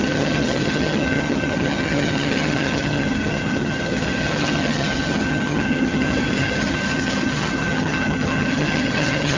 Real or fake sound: fake